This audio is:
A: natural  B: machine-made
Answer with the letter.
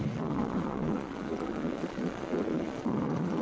B